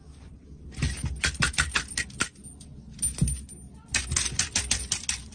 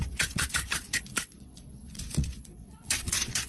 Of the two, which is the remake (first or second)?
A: second